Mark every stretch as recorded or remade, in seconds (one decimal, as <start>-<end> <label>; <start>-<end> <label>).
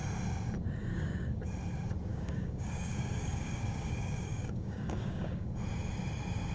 0.0-0.9 recorded; 0.9-1.5 remade; 1.5-2.1 recorded; 2.1-5.5 remade; 5.5-6.5 recorded